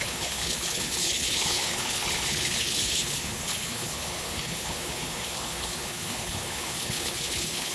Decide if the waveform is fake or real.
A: fake